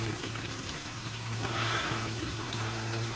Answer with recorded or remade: remade